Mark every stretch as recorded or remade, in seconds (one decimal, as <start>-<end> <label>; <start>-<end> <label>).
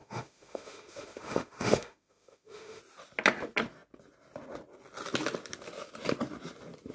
0.0-2.8 remade; 2.8-6.9 recorded